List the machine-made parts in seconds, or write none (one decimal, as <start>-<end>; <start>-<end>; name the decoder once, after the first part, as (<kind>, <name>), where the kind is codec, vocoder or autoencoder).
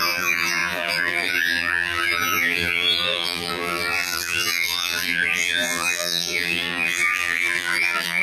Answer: 0.0-8.2 (vocoder, BigVGAN v2)